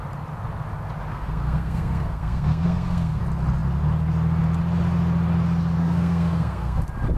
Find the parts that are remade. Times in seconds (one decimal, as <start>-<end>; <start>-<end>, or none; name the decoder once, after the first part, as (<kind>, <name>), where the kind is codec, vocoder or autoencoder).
1.1-3.2 (codec, SNAC); 5.8-6.8